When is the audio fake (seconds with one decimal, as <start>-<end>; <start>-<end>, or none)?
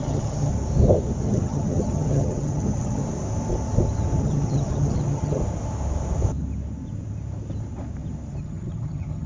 0.0-0.5; 1.2-3.0; 4.2-5.4; 8.4-9.3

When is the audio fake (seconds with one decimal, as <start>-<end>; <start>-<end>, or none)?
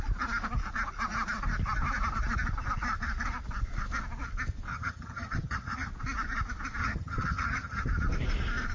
4.7-5.9; 6.8-7.9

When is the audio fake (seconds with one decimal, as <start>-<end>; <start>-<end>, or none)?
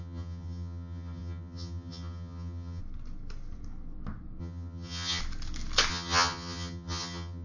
0.0-2.8; 4.4-5.2; 5.9-7.4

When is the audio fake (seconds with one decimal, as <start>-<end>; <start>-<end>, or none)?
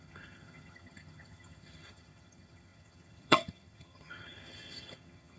0.0-5.4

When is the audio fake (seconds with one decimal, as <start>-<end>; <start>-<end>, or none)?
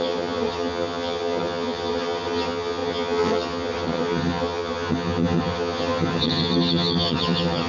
0.0-7.7